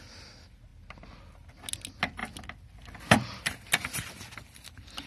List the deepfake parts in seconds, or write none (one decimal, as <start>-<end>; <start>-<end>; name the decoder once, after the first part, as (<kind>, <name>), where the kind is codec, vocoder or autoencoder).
none